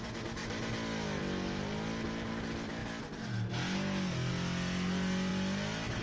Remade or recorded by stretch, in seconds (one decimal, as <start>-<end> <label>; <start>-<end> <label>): 0.0-6.0 recorded